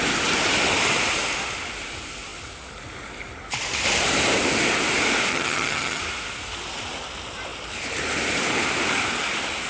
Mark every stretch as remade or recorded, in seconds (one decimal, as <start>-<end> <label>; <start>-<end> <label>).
0.0-5.3 recorded; 5.3-6.0 remade; 6.0-9.7 recorded